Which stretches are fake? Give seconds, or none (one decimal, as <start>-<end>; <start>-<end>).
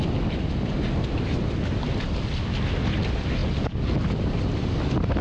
none